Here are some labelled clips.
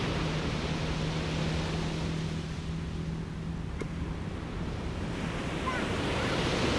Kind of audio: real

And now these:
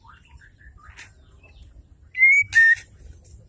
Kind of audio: real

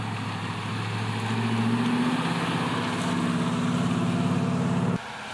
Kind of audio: real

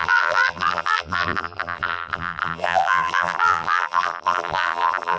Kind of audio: fake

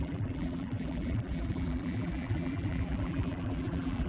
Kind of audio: fake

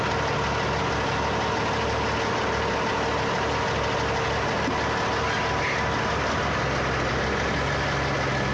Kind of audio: real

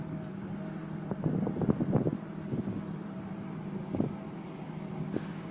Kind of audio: real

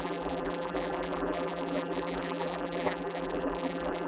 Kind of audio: fake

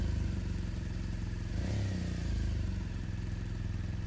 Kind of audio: fake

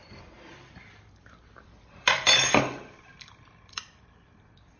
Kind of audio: fake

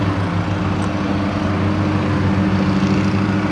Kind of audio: real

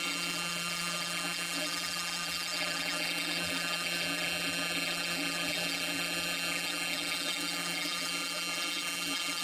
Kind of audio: fake